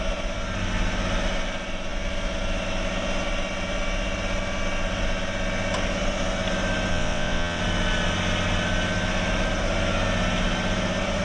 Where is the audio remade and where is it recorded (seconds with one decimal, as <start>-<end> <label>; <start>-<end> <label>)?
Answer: 0.0-6.9 recorded; 6.9-7.6 remade; 7.6-11.2 recorded